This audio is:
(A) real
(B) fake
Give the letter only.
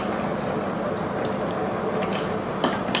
A